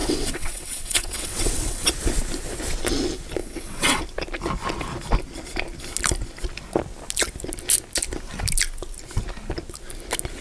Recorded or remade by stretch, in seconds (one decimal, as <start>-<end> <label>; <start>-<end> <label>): 0.0-1.9 remade; 1.9-3.4 recorded; 3.4-4.0 remade; 4.0-10.4 recorded